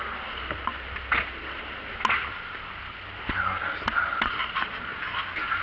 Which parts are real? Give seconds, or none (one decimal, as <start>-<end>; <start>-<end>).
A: 0.0-5.6